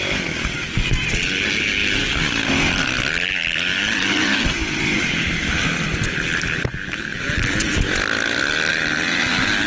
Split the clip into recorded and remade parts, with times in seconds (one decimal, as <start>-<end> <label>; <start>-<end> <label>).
0.0-3.7 recorded; 3.7-5.5 remade; 5.5-9.7 recorded